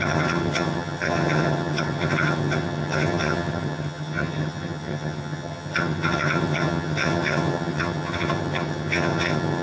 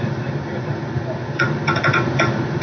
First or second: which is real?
second